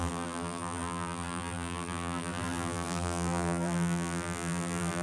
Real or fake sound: fake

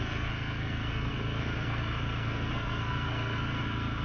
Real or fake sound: fake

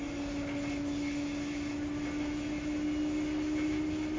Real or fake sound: real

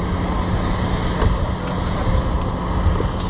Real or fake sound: real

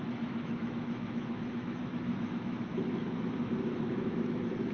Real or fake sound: fake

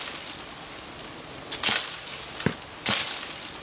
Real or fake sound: real